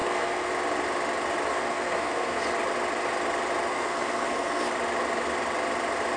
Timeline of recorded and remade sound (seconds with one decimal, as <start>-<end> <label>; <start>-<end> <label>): 0.0-0.5 remade; 0.5-1.5 recorded; 1.5-2.4 remade; 2.4-3.7 recorded; 3.7-4.7 remade; 4.7-6.2 recorded